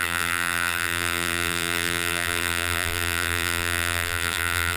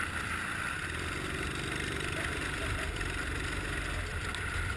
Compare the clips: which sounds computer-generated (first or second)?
first